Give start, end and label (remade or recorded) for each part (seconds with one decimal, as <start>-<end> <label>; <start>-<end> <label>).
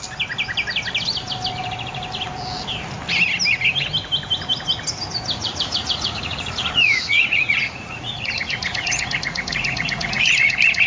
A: 0.0-5.4 recorded; 5.4-10.9 remade